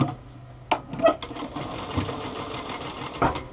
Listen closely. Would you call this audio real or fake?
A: real